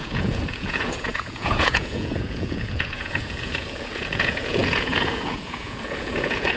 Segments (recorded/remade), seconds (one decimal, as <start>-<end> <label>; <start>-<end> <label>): 0.0-6.6 remade